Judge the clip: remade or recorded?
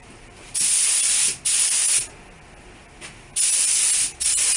recorded